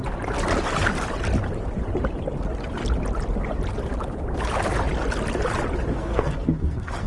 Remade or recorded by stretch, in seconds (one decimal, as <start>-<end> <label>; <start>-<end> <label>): 0.0-5.9 recorded; 5.9-7.1 remade